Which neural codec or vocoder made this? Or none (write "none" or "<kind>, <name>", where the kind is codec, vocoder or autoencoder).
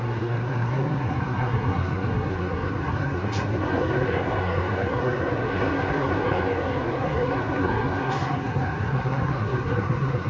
codec, SNAC